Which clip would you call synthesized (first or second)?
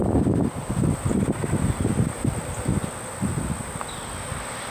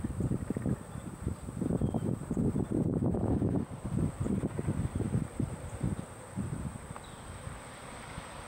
second